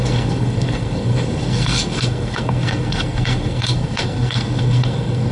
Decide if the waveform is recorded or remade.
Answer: remade